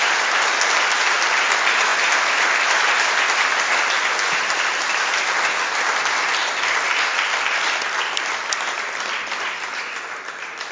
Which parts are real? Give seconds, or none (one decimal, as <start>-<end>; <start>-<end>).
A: 0.0-10.7